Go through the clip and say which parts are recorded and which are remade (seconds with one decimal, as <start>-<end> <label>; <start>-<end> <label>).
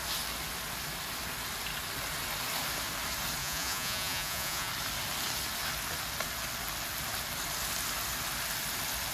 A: 0.0-3.4 recorded; 3.4-4.7 remade; 4.7-9.1 recorded